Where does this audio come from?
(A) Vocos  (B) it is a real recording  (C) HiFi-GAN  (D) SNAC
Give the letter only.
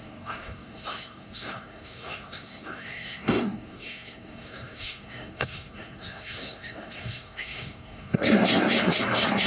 D